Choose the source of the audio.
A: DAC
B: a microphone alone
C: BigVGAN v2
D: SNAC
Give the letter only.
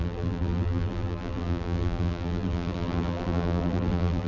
C